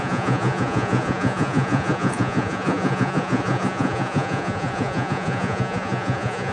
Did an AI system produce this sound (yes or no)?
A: yes